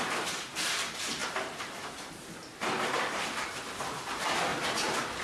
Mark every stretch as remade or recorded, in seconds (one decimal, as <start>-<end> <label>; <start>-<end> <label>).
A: 0.0-5.2 remade